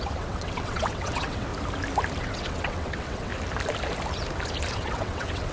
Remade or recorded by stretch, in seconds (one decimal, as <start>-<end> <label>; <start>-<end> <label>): 0.0-1.5 remade; 1.5-2.2 recorded; 2.2-3.3 remade; 3.3-4.7 recorded; 4.7-5.5 remade

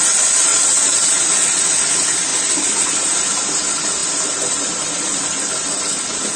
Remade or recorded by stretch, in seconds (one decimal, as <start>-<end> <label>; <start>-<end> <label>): 0.0-0.5 recorded; 0.5-1.1 remade; 1.1-6.4 recorded